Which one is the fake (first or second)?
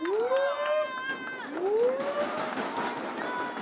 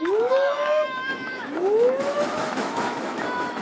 second